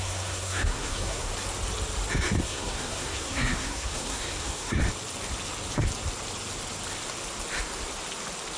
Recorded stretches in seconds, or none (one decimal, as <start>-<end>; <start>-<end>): 1.3-2.4; 4.8-8.6